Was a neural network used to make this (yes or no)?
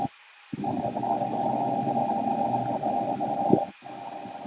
no